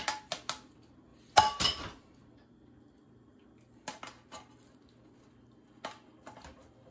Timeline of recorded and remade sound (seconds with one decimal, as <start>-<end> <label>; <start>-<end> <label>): 0.0-6.9 recorded